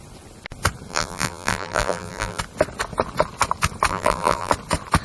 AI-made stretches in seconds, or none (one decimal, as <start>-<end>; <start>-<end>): 0.9-2.4; 3.9-4.5